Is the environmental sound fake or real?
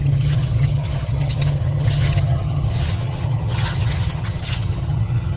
fake